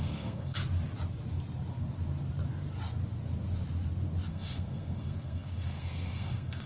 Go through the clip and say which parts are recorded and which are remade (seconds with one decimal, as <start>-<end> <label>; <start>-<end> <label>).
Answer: 0.0-0.6 remade; 0.6-4.3 recorded; 4.3-6.7 remade